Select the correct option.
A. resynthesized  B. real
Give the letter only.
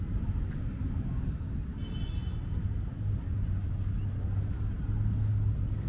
B